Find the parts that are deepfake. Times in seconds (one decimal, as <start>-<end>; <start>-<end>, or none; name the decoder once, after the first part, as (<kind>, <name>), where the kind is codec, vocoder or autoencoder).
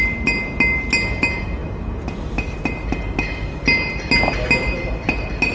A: none